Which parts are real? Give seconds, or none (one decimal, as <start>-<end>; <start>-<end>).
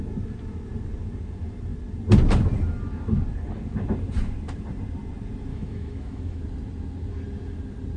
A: 0.0-5.5; 6.4-8.0